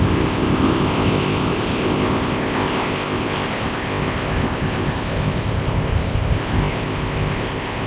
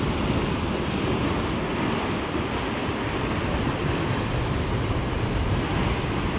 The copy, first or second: first